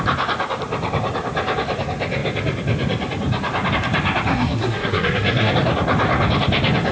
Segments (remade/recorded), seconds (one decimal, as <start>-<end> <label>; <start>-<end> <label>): 0.0-4.3 recorded; 4.3-5.5 remade; 5.5-6.9 recorded